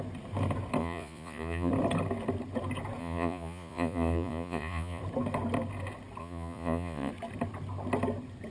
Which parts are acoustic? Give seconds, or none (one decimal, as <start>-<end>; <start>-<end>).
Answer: 0.0-0.8; 1.7-3.0; 5.0-6.2; 7.1-8.5